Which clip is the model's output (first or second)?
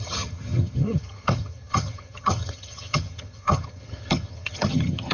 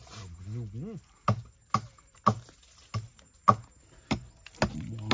first